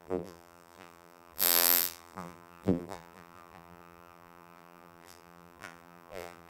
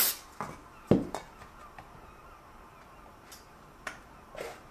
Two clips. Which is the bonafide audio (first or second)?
second